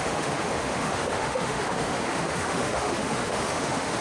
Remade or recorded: remade